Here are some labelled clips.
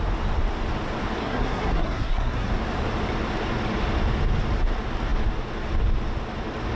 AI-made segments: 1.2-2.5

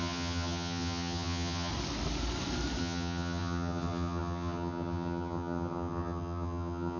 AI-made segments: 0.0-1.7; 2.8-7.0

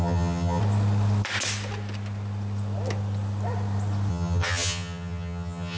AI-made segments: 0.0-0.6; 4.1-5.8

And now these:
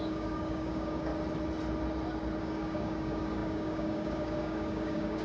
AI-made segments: 0.0-1.1; 2.4-5.2

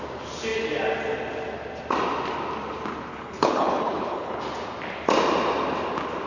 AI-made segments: 3.1-4.4

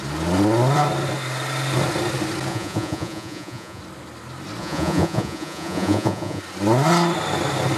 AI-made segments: 2.5-3.8; 4.6-6.4

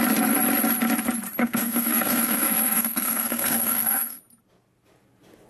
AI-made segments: 1.4-4.2

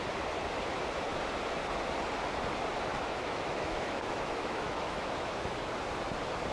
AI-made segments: 2.9-5.7